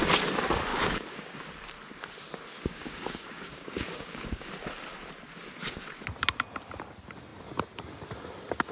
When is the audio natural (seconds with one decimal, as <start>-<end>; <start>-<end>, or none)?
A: 0.0-0.7; 1.4-2.5; 4.5-8.7

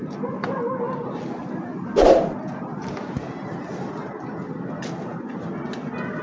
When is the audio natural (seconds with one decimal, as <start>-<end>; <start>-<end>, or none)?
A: 0.0-6.2

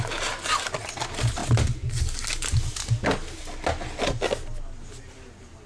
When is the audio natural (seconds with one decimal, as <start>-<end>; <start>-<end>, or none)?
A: 0.0-5.7

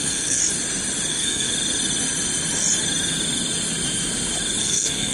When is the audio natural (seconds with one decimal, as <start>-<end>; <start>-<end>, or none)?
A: 0.4-1.1; 1.5-4.6

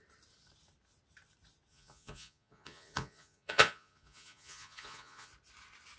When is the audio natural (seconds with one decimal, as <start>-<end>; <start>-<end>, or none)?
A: 0.0-1.7; 5.3-6.0

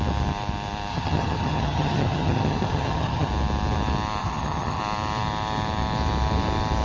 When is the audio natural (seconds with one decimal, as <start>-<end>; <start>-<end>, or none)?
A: 0.0-0.9; 3.3-4.2; 4.8-6.8